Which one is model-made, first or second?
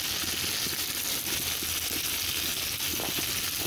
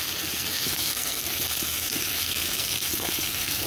second